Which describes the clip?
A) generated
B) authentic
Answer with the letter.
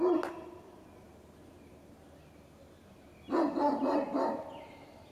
A